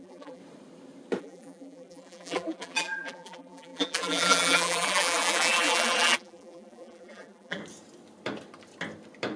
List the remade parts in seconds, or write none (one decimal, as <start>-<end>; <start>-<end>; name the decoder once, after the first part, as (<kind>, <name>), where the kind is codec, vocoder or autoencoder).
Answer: 0.0-0.4 (vocoder, BigVGAN v2); 1.2-7.6

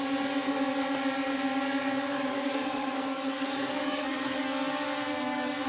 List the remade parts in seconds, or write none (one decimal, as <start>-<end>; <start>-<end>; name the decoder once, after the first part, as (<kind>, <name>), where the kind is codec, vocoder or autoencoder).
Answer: 2.3-4.4 (codec, SNAC)

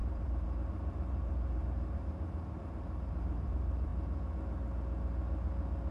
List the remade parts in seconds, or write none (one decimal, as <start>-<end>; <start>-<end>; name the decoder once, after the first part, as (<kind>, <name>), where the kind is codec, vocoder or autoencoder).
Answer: 0.0-3.9 (vocoder, BigVGAN v2)

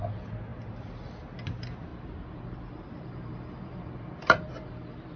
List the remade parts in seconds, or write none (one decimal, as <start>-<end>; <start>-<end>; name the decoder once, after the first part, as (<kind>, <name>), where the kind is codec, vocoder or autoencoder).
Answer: 0.5-1.1 (vocoder, BigVGAN v2); 1.9-5.2

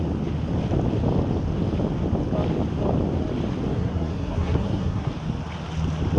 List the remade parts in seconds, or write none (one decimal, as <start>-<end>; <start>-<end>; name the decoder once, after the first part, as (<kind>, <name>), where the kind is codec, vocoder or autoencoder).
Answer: 3.7-5.1 (codec, SNAC)